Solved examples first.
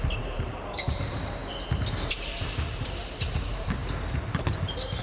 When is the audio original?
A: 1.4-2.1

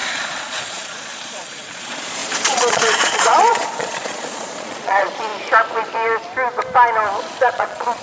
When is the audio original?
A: 5.3-7.4

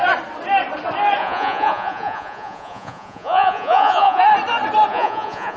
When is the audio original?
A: 0.0-1.2; 4.2-4.9

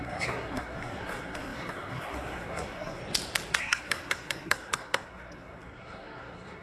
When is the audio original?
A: 3.0-3.6

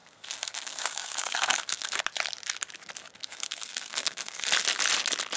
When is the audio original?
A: 2.0-3.2; 4.4-5.4

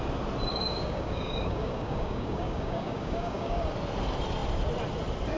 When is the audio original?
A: 0.0-0.5; 3.7-5.4

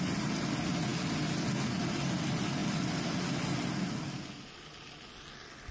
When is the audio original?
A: 0.0-5.7